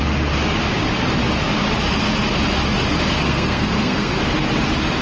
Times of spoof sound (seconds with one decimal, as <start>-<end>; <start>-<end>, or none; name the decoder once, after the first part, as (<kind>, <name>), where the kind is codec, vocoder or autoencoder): 3.1-4.1 (codec, SNAC)